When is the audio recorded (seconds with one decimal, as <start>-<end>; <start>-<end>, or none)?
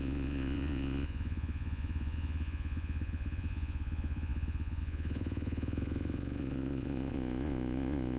none